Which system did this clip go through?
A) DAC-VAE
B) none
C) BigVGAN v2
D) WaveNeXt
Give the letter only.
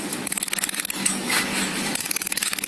A